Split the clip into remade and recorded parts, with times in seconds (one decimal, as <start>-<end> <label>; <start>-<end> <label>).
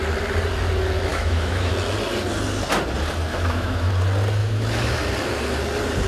0.0-1.1 recorded; 1.1-1.7 remade; 1.7-3.3 recorded; 3.3-3.9 remade; 3.9-4.4 recorded; 4.4-5.0 remade; 5.0-6.1 recorded